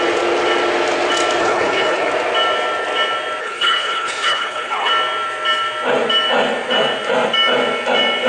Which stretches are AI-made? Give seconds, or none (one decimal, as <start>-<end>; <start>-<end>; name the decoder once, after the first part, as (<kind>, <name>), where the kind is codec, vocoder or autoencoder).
1.4-2.1 (codec, HILCodec); 3.4-4.9